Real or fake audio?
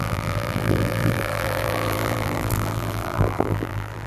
fake